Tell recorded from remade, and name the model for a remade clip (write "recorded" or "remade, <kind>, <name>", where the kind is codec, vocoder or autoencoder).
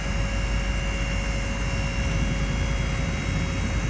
recorded